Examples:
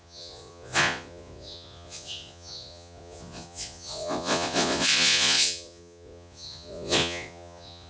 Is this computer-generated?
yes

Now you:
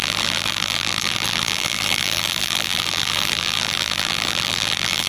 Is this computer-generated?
yes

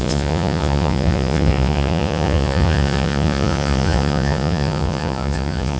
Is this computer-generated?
yes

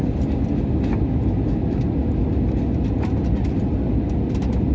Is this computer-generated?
no